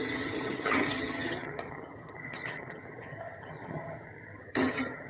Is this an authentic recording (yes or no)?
no